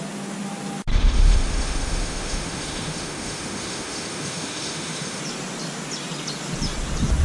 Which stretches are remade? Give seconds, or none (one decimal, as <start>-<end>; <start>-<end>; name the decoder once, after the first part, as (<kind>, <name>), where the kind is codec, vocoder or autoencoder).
0.9-5.2 (autoencoder, DAC-VAE)